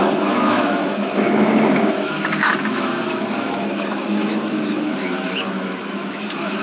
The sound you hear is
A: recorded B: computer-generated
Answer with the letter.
B